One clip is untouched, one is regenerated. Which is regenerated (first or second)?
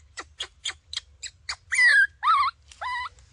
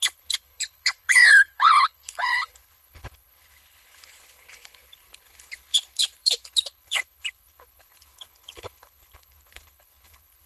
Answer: second